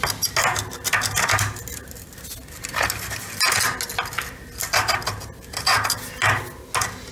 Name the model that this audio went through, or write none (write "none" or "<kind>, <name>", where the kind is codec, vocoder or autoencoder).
none